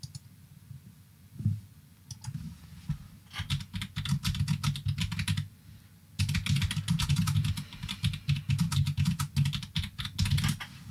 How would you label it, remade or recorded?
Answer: recorded